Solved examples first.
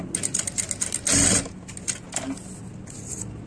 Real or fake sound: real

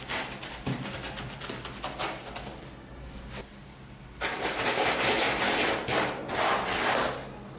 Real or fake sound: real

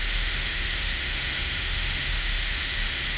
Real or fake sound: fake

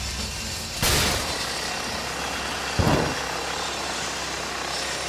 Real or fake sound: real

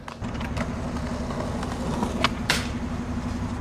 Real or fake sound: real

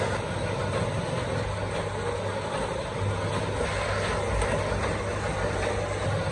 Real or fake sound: real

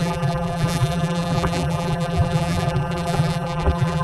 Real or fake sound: fake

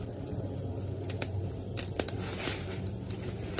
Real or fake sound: real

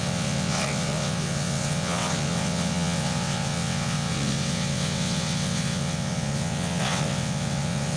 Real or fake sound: fake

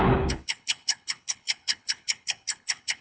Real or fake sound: fake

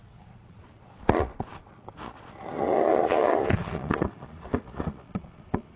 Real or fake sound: fake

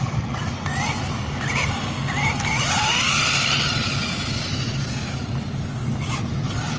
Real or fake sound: real